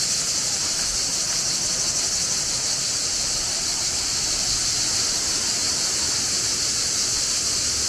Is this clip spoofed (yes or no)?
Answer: no